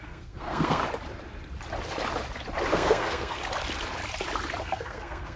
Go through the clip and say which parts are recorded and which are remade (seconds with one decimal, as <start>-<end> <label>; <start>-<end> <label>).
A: 0.0-0.8 remade; 0.8-2.7 recorded; 2.7-3.4 remade; 3.4-4.6 recorded; 4.6-5.4 remade